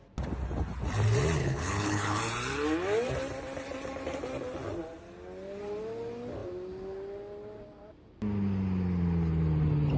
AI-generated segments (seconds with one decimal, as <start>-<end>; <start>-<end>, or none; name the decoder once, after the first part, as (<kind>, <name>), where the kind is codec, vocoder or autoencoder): 1.4-2.2 (codec, HILCodec)

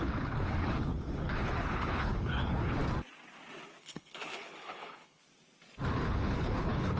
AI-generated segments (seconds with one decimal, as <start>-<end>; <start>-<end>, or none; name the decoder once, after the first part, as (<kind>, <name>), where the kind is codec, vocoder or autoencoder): 0.0-2.8 (codec, HILCodec); 3.8-5.2; 5.9-7.0

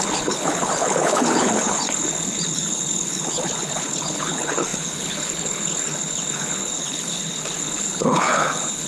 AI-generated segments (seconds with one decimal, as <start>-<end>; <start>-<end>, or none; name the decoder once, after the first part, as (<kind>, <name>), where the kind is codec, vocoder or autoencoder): 0.0-8.9 (codec, HILCodec)